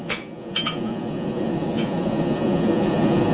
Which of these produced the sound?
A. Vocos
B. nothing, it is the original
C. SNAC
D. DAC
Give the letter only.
A